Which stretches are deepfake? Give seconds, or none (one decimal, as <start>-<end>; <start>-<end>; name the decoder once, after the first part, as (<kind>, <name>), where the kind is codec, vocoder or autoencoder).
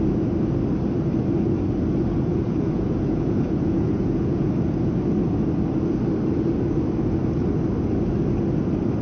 2.3-4.5 (vocoder, Vocos)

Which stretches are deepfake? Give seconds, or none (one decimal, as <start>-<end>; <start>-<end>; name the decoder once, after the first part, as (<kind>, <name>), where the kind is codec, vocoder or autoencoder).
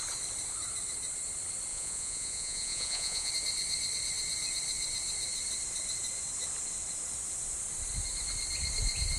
1.7-3.3 (vocoder, Vocos)